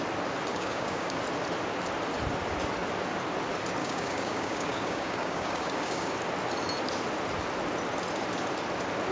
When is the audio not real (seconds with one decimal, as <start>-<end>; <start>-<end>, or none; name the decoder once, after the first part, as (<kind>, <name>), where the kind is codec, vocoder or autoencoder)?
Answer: 0.5-1.2 (codec, DAC); 3.8-6.1